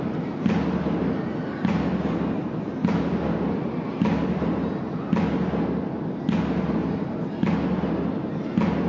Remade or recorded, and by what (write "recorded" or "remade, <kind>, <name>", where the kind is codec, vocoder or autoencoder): recorded